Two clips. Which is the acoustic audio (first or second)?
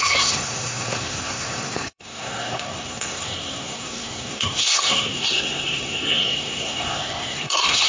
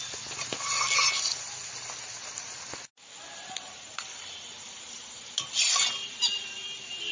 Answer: second